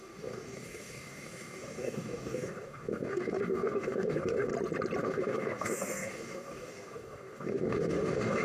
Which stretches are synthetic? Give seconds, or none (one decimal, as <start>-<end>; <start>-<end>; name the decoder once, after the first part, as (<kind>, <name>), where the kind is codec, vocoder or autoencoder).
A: 0.0-4.5 (codec, DAC); 5.0-8.4